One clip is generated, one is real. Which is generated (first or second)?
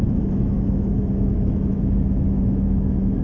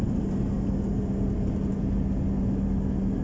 first